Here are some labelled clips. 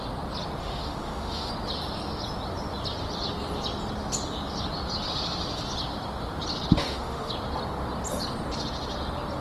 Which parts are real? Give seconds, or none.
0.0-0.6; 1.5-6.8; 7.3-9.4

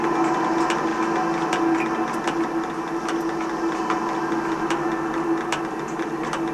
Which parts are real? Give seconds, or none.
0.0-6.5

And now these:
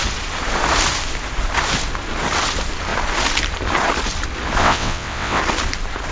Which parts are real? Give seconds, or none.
0.0-4.6; 5.4-6.1

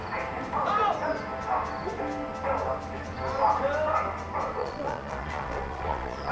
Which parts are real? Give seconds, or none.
0.0-4.6

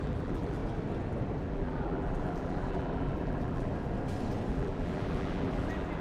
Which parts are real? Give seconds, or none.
0.6-1.4; 3.7-4.5

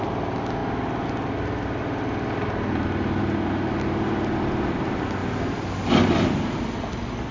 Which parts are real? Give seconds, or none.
0.0-7.3